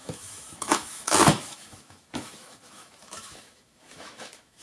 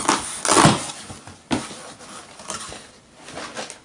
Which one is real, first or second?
second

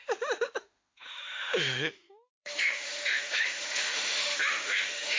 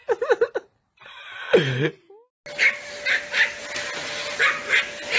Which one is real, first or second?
second